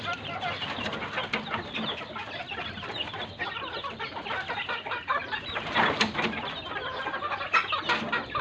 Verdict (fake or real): real